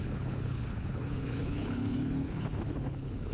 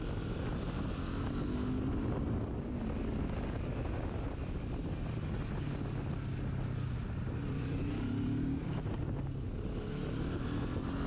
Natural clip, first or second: second